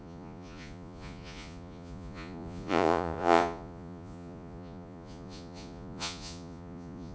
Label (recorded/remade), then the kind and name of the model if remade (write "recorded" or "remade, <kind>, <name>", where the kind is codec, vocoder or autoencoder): remade, vocoder, Vocos